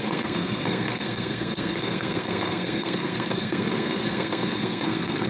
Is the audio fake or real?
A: fake